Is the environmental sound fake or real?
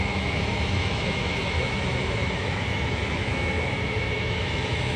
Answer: fake